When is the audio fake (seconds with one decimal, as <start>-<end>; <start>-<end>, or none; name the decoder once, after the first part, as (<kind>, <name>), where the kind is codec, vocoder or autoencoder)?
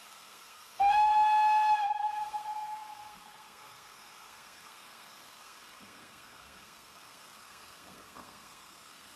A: 0.0-1.1 (codec, SNAC); 1.9-9.2